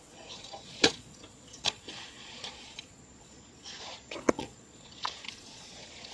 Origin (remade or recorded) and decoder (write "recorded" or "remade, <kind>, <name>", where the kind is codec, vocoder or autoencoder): remade, vocoder, Vocos